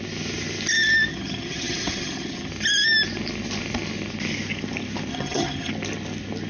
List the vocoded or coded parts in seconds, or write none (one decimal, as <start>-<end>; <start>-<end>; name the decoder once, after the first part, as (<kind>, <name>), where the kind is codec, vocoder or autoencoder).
1.1-2.5 (vocoder, HiFi-GAN); 5.1-5.7